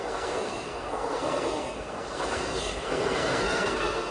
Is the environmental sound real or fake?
fake